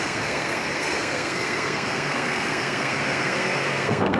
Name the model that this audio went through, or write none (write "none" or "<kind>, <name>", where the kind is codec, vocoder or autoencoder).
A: codec, SNAC